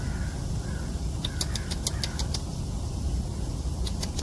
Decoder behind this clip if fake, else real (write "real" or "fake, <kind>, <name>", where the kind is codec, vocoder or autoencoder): real